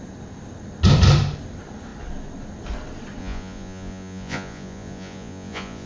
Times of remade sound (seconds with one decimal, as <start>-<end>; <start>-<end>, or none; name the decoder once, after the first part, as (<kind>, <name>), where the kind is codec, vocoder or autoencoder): 3.2-5.9 (vocoder, Vocos)